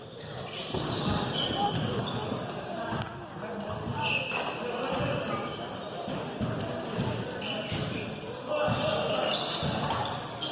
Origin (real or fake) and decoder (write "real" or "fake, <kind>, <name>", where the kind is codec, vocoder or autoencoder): real